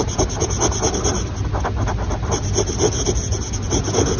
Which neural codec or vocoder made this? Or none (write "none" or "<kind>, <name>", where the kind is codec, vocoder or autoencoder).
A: none